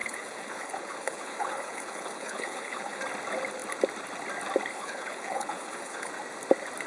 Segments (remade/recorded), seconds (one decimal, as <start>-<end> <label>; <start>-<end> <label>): 0.0-3.0 remade; 3.0-4.7 recorded; 4.7-6.1 remade; 6.1-6.9 recorded

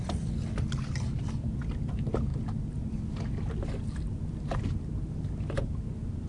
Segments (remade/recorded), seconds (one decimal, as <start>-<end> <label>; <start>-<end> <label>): 0.0-6.3 recorded

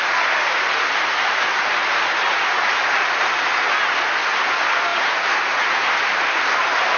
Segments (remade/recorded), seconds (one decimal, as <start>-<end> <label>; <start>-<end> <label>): 0.0-7.0 recorded

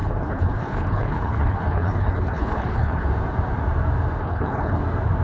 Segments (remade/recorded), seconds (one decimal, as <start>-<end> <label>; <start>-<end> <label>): 0.0-3.1 remade; 3.1-4.2 recorded; 4.2-4.8 remade; 4.8-5.2 recorded

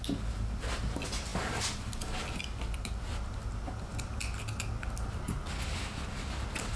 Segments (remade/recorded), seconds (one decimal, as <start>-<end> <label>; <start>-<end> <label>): 0.0-6.8 recorded